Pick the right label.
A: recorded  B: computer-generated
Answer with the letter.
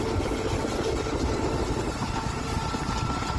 A